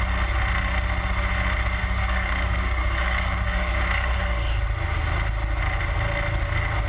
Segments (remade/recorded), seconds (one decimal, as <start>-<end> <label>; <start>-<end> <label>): 0.0-1.8 recorded; 1.8-4.5 remade; 4.5-6.9 recorded